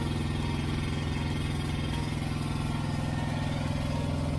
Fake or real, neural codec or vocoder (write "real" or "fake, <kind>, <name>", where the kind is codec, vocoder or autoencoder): real